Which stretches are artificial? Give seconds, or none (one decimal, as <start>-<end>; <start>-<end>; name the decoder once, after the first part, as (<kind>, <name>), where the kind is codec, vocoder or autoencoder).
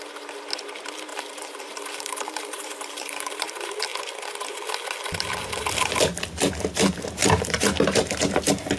1.1-3.5 (vocoder, BigVGAN v2); 7.2-7.7